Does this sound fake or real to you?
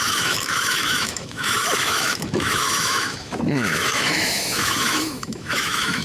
fake